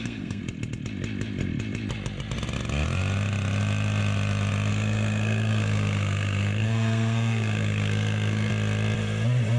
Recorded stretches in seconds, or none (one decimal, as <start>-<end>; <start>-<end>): 0.4-4.7; 8.5-9.6